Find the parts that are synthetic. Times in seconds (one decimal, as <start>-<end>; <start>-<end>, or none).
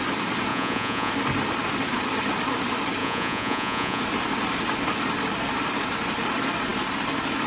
0.5-1.1; 3.0-4.0